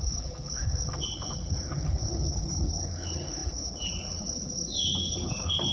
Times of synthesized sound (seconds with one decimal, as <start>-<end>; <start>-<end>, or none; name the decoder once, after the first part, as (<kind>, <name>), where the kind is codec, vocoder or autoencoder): 0.0-5.7 (codec, HILCodec)